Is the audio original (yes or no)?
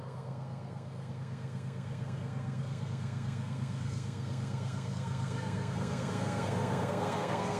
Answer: no